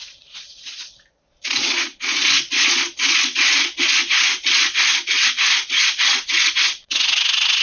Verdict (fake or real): fake